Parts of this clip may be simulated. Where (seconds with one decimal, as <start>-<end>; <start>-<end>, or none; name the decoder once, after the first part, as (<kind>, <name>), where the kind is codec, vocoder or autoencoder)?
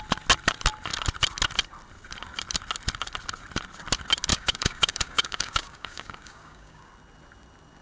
4.3-6.9 (codec, DAC)